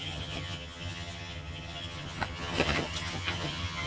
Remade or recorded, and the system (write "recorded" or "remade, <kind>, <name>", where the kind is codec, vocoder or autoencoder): remade, vocoder, HiFi-GAN